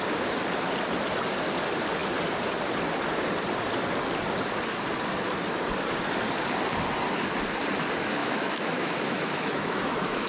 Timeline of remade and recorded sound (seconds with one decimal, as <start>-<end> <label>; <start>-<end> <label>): 0.0-8.2 recorded; 8.2-10.3 remade